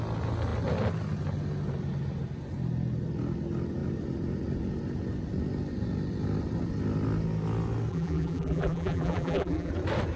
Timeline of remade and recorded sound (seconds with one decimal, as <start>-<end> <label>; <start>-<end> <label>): 0.0-7.9 recorded; 7.9-9.7 remade; 9.7-10.2 recorded